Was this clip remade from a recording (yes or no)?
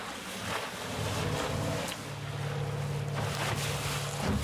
no